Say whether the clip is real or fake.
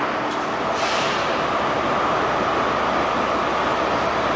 real